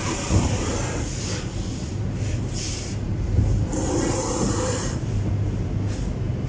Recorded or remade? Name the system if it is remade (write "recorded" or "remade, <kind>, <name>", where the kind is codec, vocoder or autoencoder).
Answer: recorded